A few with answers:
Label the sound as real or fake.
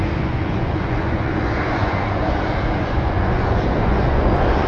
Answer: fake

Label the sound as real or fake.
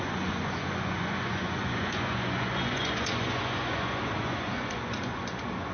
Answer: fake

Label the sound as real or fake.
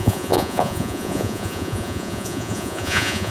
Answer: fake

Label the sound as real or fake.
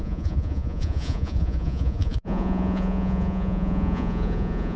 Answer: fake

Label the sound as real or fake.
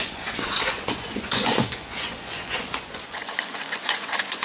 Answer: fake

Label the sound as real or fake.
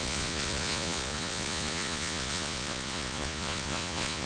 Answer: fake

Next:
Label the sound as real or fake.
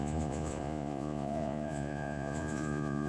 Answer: fake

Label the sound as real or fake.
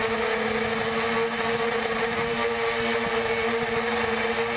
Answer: real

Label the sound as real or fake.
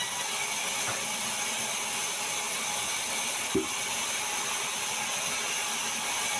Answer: real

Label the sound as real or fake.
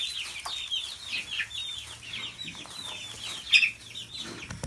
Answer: real